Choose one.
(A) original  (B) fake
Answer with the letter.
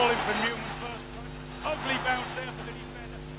A